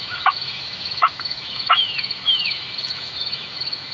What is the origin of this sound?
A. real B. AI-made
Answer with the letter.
B